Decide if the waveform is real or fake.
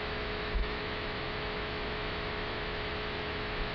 fake